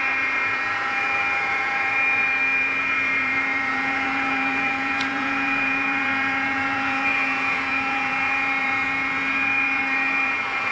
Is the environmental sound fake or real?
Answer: fake